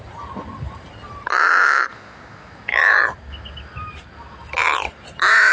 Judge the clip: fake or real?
real